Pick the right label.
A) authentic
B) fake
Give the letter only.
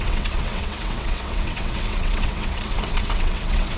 B